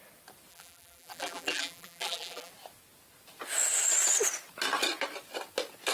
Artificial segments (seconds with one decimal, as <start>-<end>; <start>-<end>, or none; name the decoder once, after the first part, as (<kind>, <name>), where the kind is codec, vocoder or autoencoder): 0.5-2.5 (vocoder, BigVGAN v2)